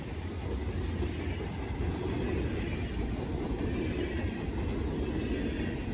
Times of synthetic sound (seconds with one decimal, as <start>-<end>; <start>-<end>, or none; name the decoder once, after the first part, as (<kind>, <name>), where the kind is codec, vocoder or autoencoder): none